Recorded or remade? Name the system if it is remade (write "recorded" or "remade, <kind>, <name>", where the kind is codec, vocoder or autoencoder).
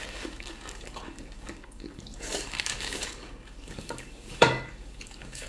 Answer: remade, codec, DAC